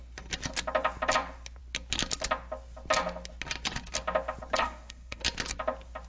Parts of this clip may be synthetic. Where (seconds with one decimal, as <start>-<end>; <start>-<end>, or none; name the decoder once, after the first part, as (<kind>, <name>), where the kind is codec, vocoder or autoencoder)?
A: 4.6-5.2 (codec, SNAC)